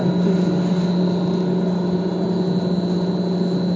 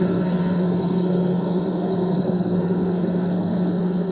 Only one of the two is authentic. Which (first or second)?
first